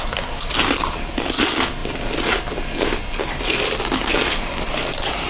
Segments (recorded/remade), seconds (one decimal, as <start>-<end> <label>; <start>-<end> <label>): 0.0-5.3 recorded